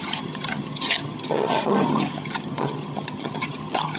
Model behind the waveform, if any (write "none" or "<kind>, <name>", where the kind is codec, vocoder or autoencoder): vocoder, HiFi-GAN